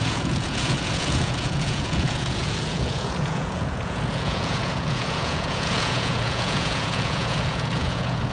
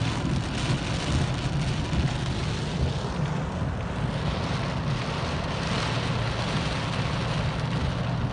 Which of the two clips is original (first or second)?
second